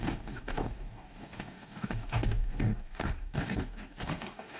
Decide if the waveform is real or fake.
fake